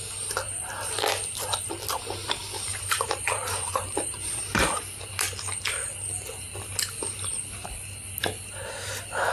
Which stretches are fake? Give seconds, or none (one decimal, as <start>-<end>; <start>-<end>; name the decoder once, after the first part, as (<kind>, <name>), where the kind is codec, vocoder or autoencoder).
2.7-5.0 (vocoder, BigVGAN v2)